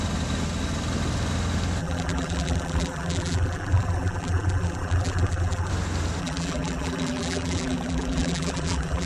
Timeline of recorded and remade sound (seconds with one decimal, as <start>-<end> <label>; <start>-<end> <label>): 0.0-1.8 recorded; 1.8-5.7 remade; 5.7-6.2 recorded; 6.2-9.1 remade